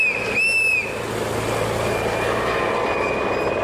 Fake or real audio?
real